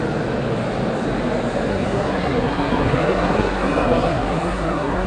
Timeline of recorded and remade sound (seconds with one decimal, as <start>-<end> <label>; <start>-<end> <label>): 0.0-1.7 recorded; 1.7-5.1 remade